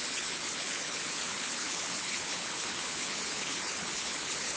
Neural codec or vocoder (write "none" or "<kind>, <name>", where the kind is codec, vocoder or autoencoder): codec, HILCodec